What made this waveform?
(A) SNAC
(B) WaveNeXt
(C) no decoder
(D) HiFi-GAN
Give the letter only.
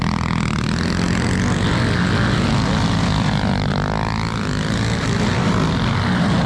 C